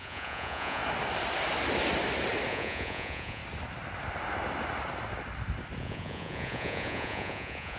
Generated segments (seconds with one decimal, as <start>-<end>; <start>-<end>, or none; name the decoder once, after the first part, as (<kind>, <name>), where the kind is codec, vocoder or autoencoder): 0.0-0.8 (vocoder, Vocos); 2.5-3.4; 5.8-7.8